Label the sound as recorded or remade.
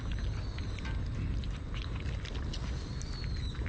recorded